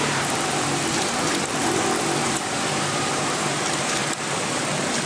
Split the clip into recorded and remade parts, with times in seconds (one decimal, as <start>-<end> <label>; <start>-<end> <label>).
0.0-4.0 remade; 4.0-4.5 recorded; 4.5-5.1 remade